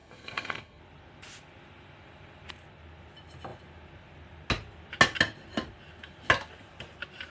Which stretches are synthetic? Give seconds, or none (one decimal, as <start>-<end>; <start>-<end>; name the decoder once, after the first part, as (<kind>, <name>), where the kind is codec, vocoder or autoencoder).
0.0-0.8 (codec, SNAC)